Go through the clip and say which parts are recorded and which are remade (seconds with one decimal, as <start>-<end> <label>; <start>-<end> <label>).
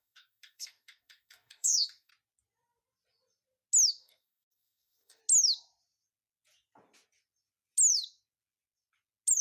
0.0-2.1 remade; 2.1-3.9 recorded; 3.9-5.2 remade; 5.2-9.4 recorded